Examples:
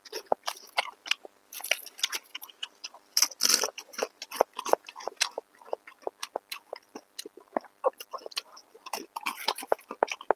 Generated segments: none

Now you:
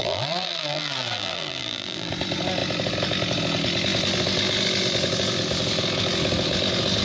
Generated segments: 0.0-2.1